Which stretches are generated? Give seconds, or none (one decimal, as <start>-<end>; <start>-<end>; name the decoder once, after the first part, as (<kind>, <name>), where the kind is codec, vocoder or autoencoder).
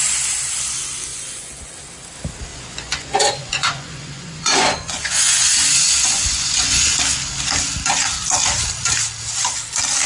1.1-1.7 (vocoder, Vocos); 2.5-6.9